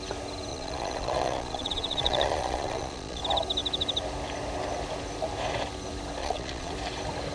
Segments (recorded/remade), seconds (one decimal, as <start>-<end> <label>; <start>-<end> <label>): 0.0-0.5 recorded; 0.5-3.2 remade; 3.2-6.2 recorded; 6.2-6.7 remade; 6.7-7.3 recorded